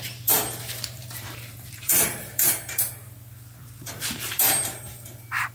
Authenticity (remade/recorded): remade